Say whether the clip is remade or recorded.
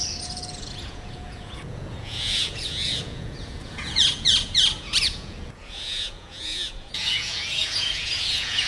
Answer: remade